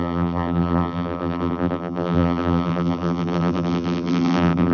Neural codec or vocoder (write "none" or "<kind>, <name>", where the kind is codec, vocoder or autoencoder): vocoder, BigVGAN v2